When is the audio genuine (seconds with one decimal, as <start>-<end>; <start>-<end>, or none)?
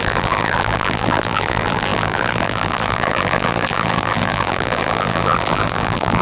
none